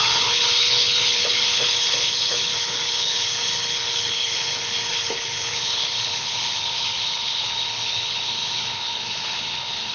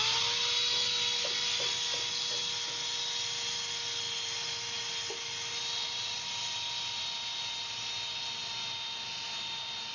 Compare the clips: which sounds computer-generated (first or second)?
first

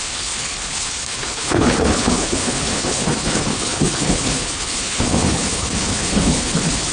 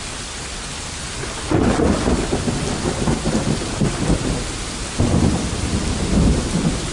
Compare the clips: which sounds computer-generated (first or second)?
first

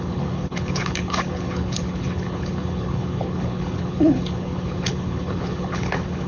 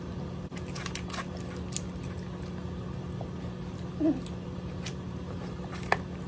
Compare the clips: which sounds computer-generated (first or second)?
first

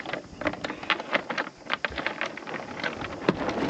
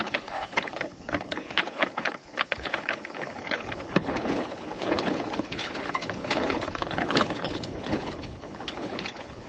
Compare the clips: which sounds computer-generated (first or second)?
second